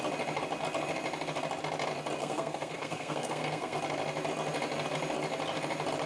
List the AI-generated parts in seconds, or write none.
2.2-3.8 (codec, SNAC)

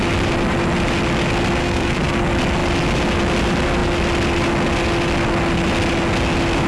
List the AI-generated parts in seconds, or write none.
1.6-2.2 (codec, SNAC)

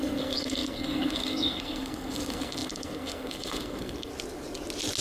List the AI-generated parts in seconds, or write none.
0.0-4.1 (codec, SNAC)

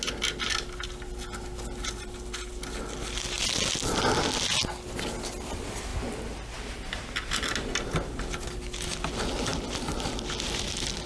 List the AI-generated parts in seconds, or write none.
none